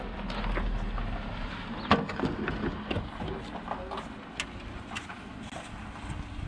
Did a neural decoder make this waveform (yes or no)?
no